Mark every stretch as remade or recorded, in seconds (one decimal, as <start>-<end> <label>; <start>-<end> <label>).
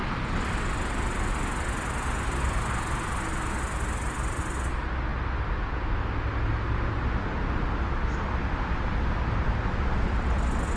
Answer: 0.0-10.8 recorded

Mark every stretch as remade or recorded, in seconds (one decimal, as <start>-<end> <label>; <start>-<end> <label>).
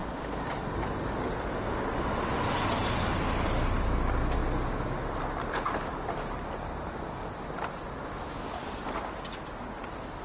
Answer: 0.0-10.2 recorded